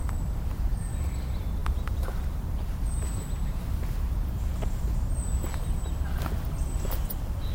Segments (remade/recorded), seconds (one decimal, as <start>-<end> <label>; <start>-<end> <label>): 0.0-0.8 remade; 0.8-7.5 recorded